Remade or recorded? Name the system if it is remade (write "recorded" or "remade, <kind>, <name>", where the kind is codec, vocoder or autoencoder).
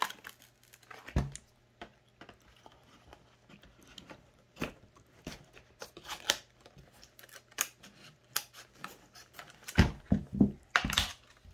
recorded